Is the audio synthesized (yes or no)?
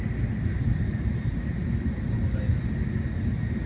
no